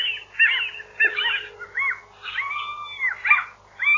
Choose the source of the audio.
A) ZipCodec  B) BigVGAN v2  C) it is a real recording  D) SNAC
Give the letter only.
C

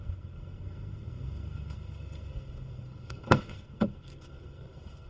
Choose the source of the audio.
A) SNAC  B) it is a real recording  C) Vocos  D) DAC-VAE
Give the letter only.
A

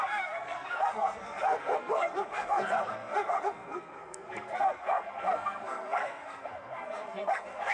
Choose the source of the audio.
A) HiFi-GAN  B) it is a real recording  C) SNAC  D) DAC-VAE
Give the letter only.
C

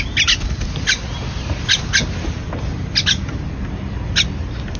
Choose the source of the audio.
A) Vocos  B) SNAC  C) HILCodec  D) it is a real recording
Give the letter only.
D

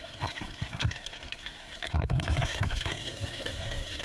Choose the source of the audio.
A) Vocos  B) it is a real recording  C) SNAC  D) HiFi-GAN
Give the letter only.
C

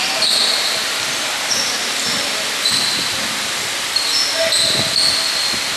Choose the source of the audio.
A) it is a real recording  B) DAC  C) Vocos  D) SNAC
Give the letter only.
A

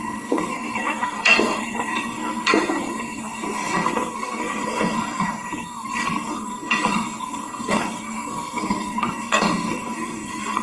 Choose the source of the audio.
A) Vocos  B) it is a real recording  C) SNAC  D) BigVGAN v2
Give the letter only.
C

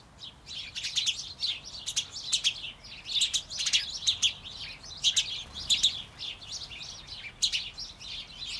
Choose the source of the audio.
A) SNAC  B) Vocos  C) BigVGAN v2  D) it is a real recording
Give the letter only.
D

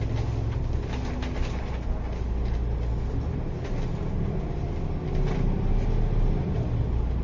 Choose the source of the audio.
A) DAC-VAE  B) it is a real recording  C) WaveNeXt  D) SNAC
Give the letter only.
B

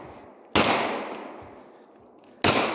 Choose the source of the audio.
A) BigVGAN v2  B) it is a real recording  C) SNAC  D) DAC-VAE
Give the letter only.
B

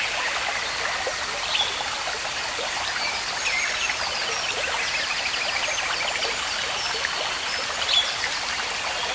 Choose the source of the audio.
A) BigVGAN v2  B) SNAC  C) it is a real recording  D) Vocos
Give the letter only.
C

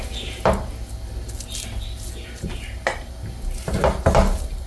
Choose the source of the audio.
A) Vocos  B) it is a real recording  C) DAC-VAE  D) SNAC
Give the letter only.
B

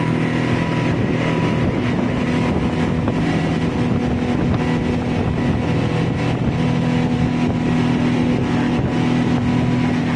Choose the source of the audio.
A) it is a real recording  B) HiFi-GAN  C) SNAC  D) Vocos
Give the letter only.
A